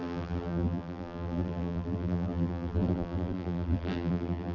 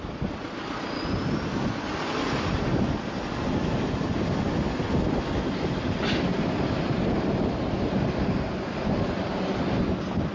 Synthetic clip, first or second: first